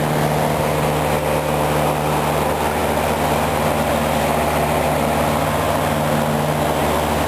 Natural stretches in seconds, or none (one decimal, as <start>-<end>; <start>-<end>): 0.0-7.3